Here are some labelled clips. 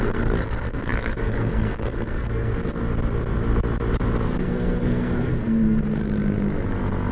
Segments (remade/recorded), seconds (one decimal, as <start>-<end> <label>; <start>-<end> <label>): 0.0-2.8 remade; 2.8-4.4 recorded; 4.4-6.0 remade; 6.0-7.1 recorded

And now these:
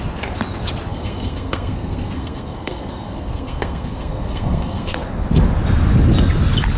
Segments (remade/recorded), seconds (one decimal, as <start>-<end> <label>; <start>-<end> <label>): 0.0-0.9 recorded; 0.9-5.0 remade; 5.0-6.8 recorded

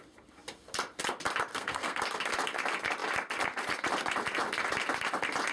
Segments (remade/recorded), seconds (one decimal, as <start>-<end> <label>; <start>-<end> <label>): 0.0-1.5 recorded; 1.5-2.0 remade; 2.0-5.5 recorded